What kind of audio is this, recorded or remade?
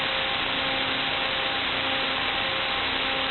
recorded